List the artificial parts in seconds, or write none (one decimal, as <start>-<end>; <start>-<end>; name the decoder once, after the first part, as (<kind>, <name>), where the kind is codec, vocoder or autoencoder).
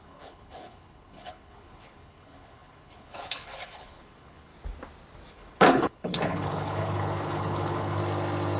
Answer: 0.0-4.5 (codec, HILCodec); 5.3-8.0